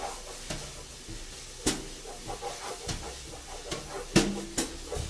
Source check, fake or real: real